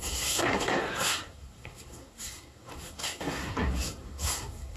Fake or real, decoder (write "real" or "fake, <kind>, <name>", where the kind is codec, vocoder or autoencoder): fake, codec, SNAC